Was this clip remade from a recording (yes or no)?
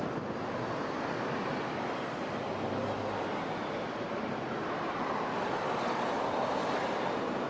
no